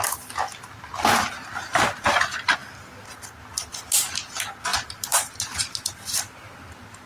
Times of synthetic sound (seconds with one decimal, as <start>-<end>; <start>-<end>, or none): 4.7-7.1